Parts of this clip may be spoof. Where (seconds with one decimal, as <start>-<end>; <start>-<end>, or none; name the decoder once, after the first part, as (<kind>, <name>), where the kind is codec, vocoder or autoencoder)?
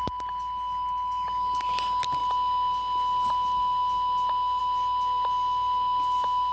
none